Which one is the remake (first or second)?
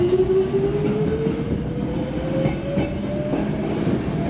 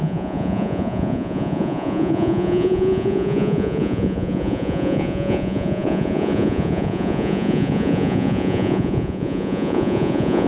second